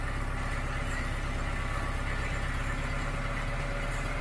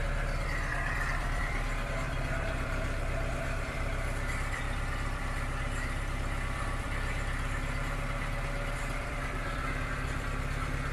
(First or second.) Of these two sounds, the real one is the first